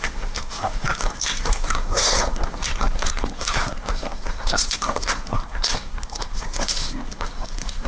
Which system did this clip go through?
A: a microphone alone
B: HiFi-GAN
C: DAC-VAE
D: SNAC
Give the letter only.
D